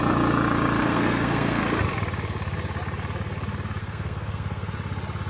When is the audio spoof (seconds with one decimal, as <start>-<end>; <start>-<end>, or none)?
0.8-1.6; 3.8-4.7